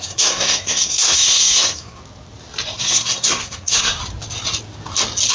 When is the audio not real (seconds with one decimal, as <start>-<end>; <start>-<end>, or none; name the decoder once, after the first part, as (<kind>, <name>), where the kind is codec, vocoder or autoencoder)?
0.0-2.0 (codec, SNAC); 2.8-4.0